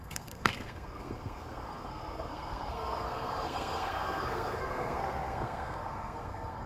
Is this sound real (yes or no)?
no